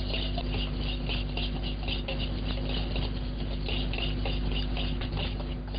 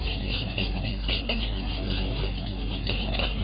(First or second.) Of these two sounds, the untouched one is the first